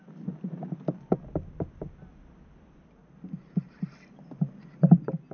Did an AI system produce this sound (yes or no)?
no